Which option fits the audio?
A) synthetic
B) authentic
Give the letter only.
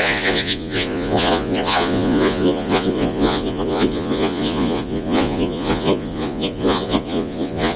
A